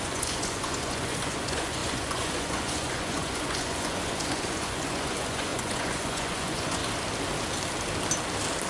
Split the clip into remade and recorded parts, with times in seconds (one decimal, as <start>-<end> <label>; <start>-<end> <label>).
0.0-6.8 remade; 6.8-8.7 recorded